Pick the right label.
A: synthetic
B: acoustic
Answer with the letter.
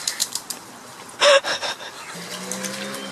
B